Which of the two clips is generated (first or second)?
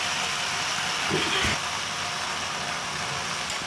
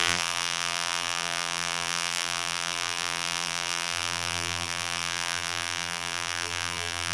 second